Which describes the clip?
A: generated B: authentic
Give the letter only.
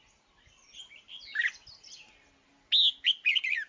B